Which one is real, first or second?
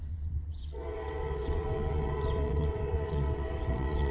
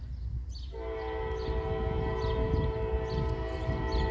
second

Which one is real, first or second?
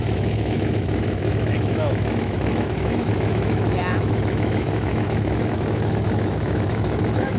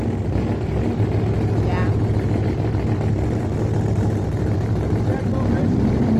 second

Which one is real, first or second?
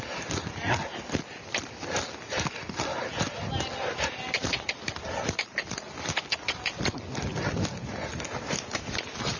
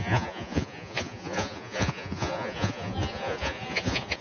first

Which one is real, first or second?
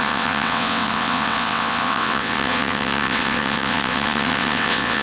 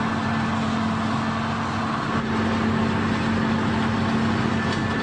second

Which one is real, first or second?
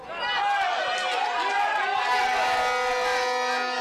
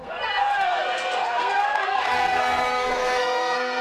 first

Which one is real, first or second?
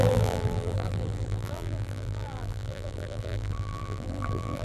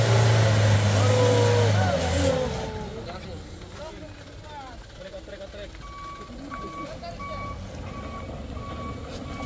second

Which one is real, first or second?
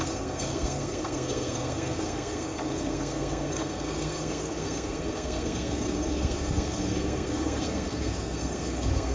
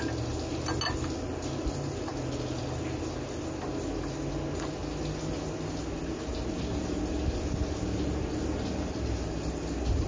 second